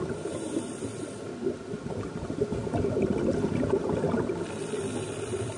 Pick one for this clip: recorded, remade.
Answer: recorded